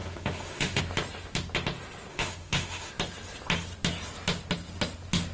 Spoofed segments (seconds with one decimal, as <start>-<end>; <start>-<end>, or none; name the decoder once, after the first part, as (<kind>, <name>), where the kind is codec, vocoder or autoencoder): 0.0-0.8 (autoencoder, DAC-VAE); 2.1-2.9